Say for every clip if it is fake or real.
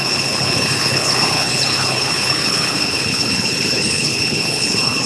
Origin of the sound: fake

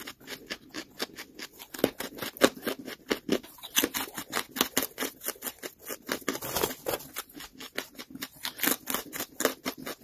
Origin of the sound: real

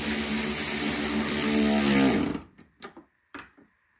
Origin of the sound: real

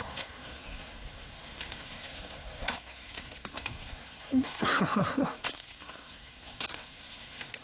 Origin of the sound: fake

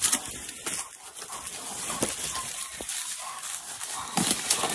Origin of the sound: real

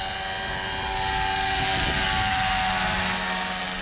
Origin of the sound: real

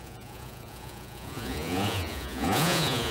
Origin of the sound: fake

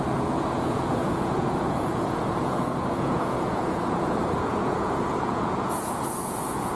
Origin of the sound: fake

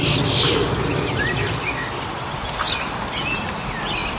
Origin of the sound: real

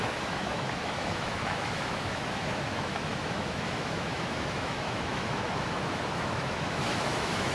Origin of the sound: fake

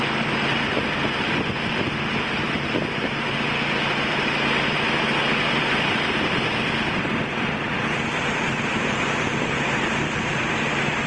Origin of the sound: real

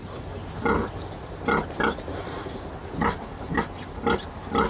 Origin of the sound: real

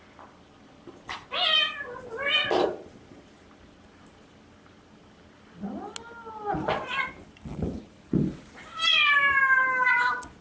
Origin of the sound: real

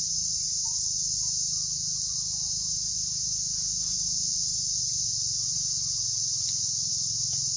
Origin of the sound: real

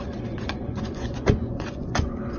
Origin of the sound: fake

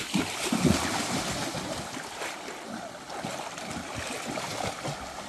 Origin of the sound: real